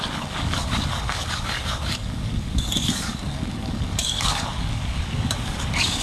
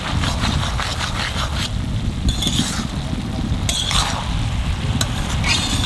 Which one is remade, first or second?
first